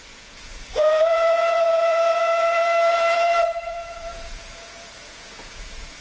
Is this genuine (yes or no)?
no